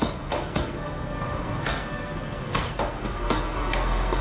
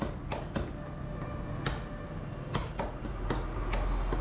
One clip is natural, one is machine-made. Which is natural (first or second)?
second